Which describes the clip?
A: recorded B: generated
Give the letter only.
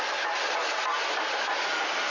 A